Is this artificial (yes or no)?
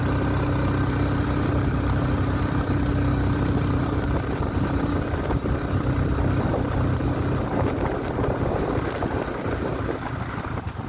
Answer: no